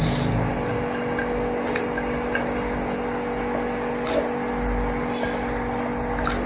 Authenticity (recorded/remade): recorded